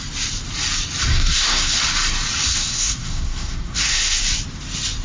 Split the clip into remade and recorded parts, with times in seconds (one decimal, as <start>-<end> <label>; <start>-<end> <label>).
0.0-1.1 recorded; 1.1-1.7 remade; 1.7-2.5 recorded; 2.5-4.2 remade; 4.2-5.0 recorded